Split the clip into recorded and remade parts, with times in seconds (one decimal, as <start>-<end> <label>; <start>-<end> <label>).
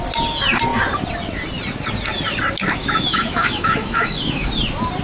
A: 0.0-2.8 recorded; 2.8-4.5 remade; 4.5-5.0 recorded